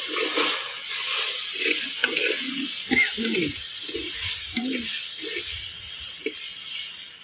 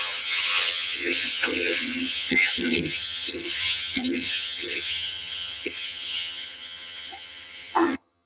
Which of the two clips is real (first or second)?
first